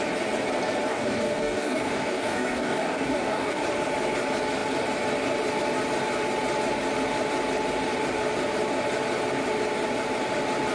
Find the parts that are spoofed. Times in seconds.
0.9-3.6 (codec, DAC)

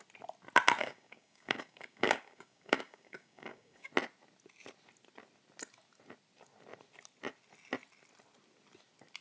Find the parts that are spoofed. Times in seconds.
0.8-3.9 (codec, DAC)

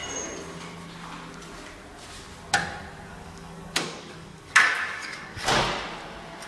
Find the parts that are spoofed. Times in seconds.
3.1-5.6 (codec, DAC)

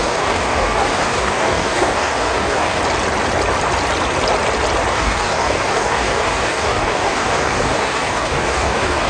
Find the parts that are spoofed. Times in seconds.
0.0-2.8 (codec, DAC); 4.9-9.1

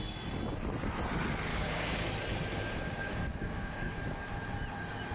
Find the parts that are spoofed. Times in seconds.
1.5-2.1 (codec, DAC); 2.5-4.0

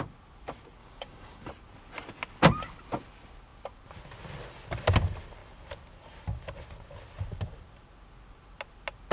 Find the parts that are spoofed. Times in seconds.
0.8-1.5 (codec, DAC)

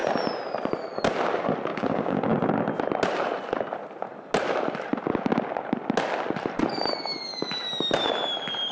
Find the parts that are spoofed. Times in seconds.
1.7-2.3 (codec, DAC)